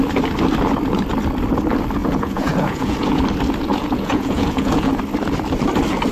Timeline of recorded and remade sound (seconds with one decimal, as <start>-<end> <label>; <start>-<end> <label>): 0.0-2.0 recorded; 2.0-3.2 remade; 3.2-3.7 recorded; 3.7-5.0 remade; 5.0-6.1 recorded